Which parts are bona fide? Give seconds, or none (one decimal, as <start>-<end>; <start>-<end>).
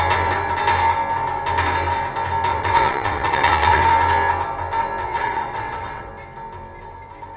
0.0-2.5; 3.8-5.0; 6.1-7.4